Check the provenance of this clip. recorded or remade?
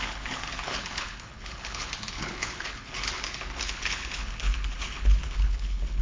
remade